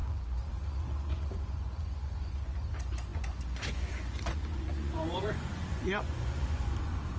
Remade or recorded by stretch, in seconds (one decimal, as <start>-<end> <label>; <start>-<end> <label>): 0.0-7.2 remade